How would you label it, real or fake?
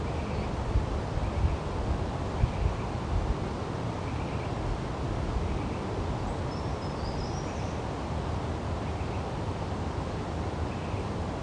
real